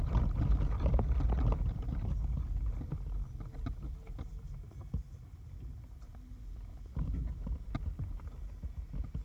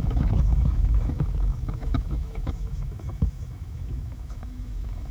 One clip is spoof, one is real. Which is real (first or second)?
first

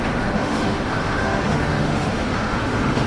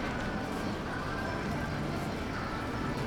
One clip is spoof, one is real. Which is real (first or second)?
second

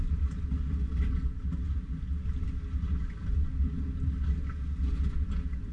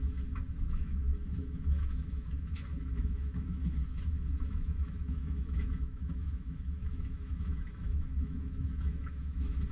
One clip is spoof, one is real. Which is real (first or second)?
first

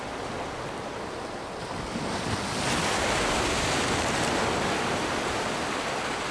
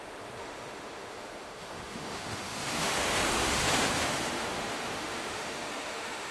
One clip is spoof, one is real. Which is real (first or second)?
first